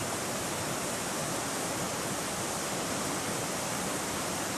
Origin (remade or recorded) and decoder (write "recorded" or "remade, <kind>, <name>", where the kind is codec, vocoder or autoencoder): recorded